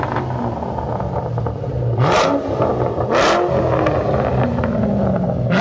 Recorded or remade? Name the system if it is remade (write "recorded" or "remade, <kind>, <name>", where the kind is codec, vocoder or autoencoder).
recorded